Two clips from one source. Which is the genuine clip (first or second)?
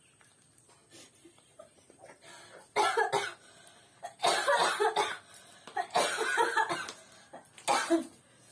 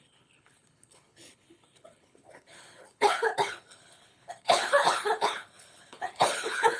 first